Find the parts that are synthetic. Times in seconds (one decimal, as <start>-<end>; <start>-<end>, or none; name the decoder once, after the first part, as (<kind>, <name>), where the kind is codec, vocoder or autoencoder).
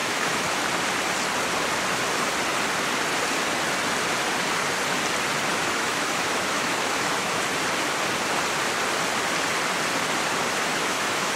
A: 0.0-0.6 (autoencoder, DAC-VAE); 5.5-7.4; 10.7-11.4